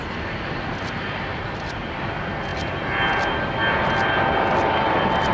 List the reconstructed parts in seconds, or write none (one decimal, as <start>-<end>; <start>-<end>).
none